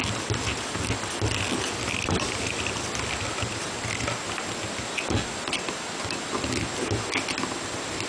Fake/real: real